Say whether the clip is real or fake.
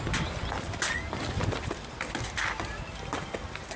real